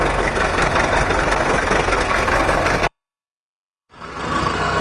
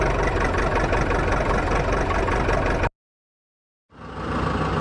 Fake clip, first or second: first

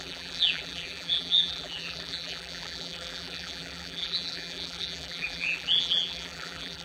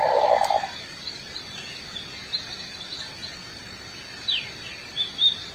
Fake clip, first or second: first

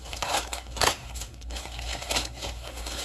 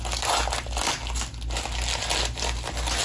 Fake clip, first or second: first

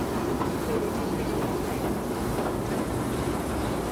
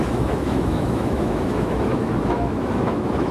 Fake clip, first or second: second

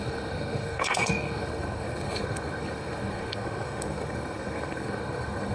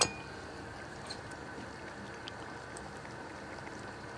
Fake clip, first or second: first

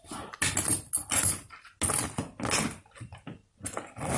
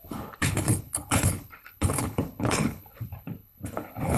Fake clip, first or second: second